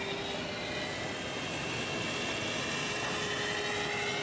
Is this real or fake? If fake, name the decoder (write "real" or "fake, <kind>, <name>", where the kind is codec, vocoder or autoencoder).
real